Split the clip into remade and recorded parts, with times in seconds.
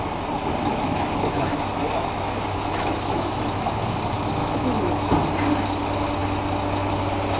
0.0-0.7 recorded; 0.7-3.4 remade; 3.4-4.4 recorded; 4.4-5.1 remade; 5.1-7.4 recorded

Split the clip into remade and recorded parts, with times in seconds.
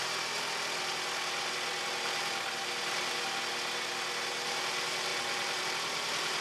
0.0-6.4 recorded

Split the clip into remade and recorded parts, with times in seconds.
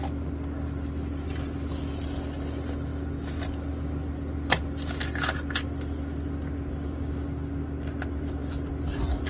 0.0-9.3 recorded